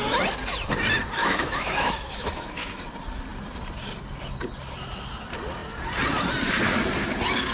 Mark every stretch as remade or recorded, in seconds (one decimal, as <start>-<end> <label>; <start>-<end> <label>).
0.0-1.2 recorded; 1.2-2.8 remade; 2.8-7.5 recorded